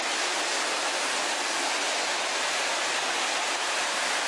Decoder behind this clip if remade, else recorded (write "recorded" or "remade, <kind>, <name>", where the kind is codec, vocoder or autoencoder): recorded